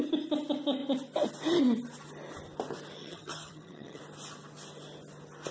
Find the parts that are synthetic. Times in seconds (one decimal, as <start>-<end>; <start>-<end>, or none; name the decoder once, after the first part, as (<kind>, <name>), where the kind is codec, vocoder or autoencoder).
3.0-4.0 (vocoder, HiFi-GAN)